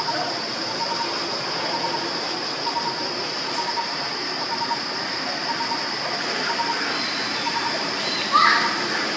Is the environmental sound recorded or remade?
recorded